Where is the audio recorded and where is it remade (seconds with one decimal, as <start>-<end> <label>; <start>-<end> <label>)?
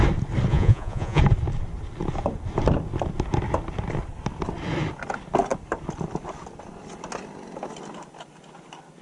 0.0-0.5 recorded; 0.5-1.2 remade; 1.2-9.0 recorded